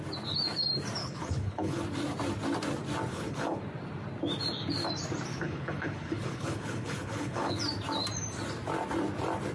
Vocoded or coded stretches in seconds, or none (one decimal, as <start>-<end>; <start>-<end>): 1.0-1.8; 3.1-3.6; 5.3-7.6